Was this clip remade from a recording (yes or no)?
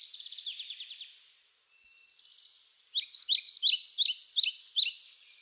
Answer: no